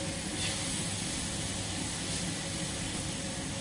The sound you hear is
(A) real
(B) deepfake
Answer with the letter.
A